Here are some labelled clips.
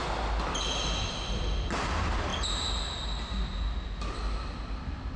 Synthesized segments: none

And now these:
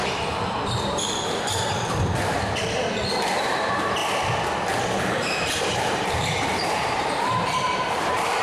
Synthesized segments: 0.0-2.8 (vocoder, BigVGAN v2); 3.4-4.0; 4.8-8.4